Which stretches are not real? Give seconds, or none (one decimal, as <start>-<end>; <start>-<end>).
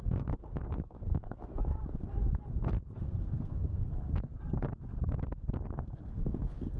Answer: 0.0-1.5; 3.0-4.7; 5.6-6.8